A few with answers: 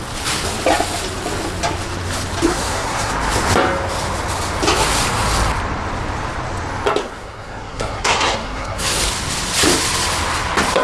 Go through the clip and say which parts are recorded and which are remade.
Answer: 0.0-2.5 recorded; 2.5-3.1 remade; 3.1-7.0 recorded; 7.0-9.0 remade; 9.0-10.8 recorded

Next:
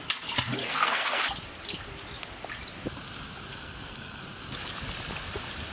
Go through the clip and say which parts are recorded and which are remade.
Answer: 0.0-0.6 recorded; 0.6-1.2 remade; 1.2-3.5 recorded; 3.5-4.2 remade; 4.2-5.7 recorded

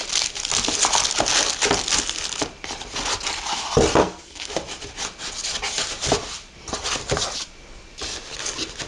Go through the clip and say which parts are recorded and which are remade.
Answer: 0.0-4.0 recorded; 4.0-4.5 remade; 4.5-8.9 recorded

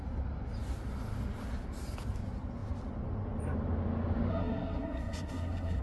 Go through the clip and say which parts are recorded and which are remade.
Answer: 0.0-4.3 recorded; 4.3-5.8 remade

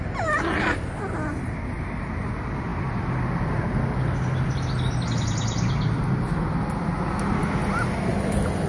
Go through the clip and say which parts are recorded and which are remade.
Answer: 0.0-8.7 recorded

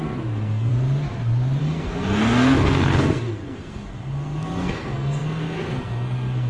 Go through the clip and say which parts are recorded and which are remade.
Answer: 0.0-0.7 remade; 0.7-1.6 recorded; 1.6-6.5 remade

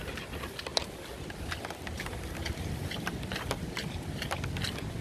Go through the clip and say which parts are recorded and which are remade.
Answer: 0.0-5.0 recorded